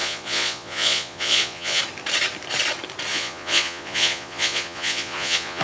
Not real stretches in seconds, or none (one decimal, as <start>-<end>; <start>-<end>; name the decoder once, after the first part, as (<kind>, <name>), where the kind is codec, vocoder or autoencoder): 0.0-1.8 (vocoder, Vocos); 3.1-5.6